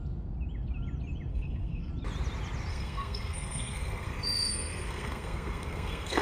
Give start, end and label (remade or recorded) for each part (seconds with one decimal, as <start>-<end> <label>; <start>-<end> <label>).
0.0-1.3 recorded; 1.3-1.9 remade; 1.9-2.7 recorded; 2.7-6.2 remade